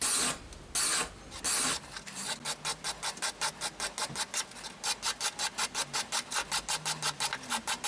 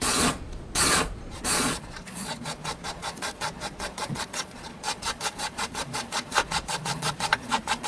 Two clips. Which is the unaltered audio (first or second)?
first